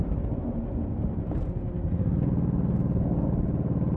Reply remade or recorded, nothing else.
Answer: recorded